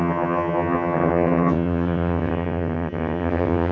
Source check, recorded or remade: remade